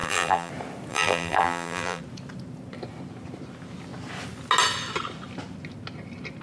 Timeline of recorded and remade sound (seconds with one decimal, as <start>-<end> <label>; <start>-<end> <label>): 0.0-0.5 remade; 0.5-0.9 recorded; 0.9-2.0 remade; 2.0-6.4 recorded